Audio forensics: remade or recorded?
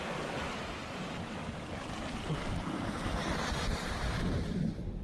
recorded